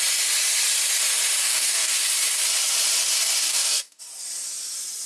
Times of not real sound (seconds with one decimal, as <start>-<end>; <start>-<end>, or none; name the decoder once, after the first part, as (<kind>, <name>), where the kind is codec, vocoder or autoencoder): 1.4-1.9 (codec, DAC); 3.4-4.0